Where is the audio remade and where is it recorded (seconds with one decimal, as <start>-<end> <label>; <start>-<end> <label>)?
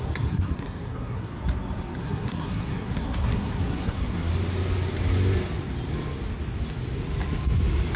0.0-1.3 remade; 1.3-2.0 recorded; 2.0-4.3 remade; 4.3-8.0 recorded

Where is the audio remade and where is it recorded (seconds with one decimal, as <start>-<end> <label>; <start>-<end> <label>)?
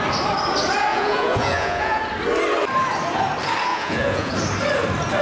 0.0-0.9 recorded; 0.9-2.0 remade; 2.0-3.7 recorded; 3.7-4.3 remade; 4.3-5.2 recorded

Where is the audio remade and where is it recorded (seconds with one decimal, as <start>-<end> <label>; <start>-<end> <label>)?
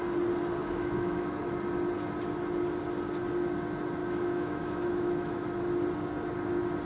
0.0-0.6 recorded; 0.6-1.4 remade; 1.4-4.0 recorded; 4.0-5.6 remade; 5.6-6.8 recorded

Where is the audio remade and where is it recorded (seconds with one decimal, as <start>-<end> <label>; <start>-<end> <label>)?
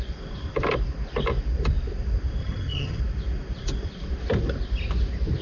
0.0-2.4 recorded; 2.4-3.0 remade; 3.0-5.4 recorded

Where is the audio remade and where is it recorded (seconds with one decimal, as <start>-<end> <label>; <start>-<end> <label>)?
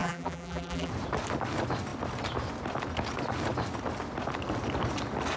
0.0-0.9 remade; 0.9-5.4 recorded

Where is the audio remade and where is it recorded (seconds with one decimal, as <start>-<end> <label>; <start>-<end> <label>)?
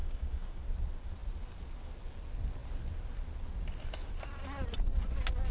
0.0-0.6 remade; 0.6-5.5 recorded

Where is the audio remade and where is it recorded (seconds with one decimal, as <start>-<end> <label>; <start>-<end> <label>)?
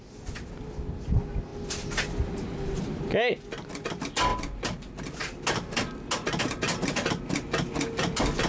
0.0-8.5 recorded